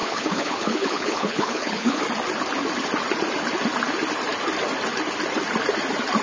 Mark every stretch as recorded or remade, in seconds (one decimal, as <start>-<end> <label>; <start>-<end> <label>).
0.0-2.0 remade; 2.0-6.2 recorded